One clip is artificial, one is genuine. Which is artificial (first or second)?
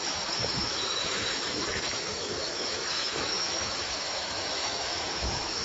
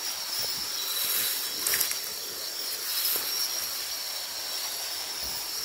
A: first